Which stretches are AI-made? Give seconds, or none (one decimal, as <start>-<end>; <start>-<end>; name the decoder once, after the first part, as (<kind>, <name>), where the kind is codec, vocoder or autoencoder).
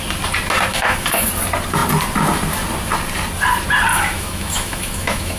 0.7-1.3 (autoencoder, DAC-VAE); 3.9-5.4